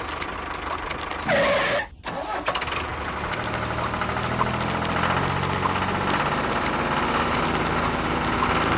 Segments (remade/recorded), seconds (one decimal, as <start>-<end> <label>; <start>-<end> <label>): 0.0-8.8 recorded

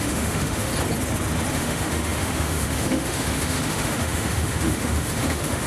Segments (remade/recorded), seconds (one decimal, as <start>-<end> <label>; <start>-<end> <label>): 0.0-0.7 remade; 0.7-1.5 recorded; 1.5-5.7 remade